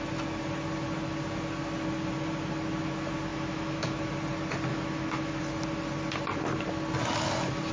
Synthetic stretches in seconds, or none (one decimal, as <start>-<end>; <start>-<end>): 3.3-4.1; 4.7-5.4